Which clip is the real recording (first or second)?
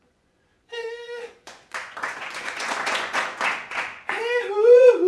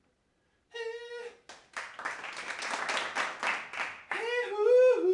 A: second